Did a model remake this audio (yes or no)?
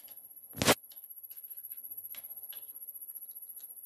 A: no